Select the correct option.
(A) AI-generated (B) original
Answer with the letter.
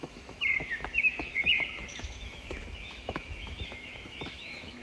A